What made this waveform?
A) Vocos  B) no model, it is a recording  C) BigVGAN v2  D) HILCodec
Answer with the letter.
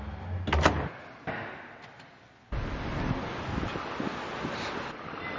B